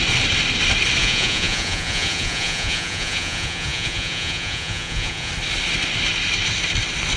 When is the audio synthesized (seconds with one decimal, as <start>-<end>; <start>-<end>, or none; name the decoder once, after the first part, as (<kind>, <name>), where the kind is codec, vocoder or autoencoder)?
1.0-5.3 (vocoder, Vocos)